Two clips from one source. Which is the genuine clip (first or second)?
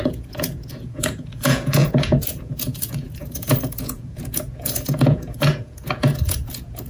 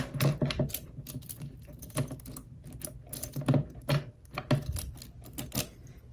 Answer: second